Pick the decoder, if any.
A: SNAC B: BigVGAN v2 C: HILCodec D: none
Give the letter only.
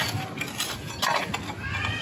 D